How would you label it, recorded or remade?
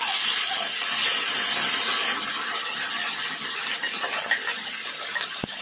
recorded